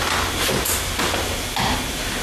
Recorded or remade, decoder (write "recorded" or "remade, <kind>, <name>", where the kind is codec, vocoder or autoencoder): recorded